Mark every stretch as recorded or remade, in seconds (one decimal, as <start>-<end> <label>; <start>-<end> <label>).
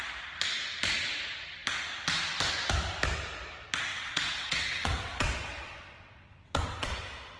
0.0-3.9 recorded; 3.9-7.4 remade